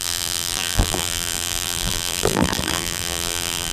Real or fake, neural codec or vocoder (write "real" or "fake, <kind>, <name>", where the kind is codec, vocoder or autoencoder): fake, vocoder, BigVGAN v2